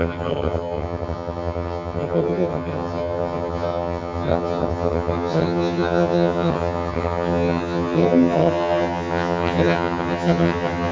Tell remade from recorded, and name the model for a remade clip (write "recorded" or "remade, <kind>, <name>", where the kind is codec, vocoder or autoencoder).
remade, vocoder, HiFi-GAN